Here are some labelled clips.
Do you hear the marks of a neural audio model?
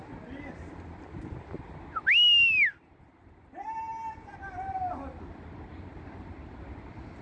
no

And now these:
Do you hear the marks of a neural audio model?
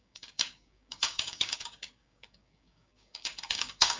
yes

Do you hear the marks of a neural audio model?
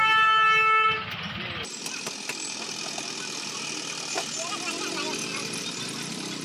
no